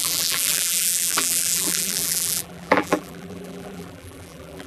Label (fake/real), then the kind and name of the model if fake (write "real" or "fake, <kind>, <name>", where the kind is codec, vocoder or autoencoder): fake, vocoder, BigVGAN v2